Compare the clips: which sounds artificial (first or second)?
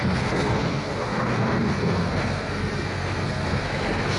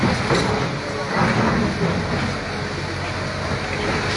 first